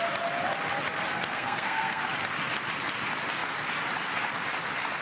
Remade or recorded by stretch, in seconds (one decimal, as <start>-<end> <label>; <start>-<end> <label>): 0.0-1.2 recorded; 1.2-2.0 remade; 2.0-5.0 recorded